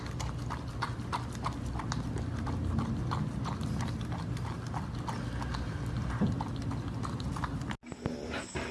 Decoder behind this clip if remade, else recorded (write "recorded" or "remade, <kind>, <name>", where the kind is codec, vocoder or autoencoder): recorded